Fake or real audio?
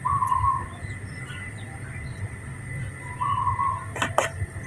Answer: real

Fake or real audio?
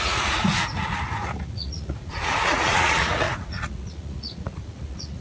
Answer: fake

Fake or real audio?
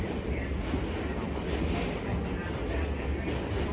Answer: real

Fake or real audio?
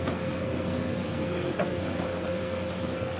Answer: fake